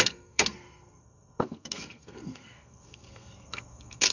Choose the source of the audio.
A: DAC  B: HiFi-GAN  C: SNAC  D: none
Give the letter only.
C